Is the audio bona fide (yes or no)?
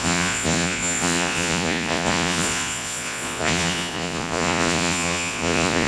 no